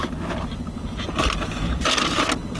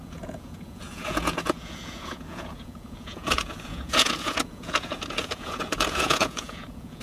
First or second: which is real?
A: first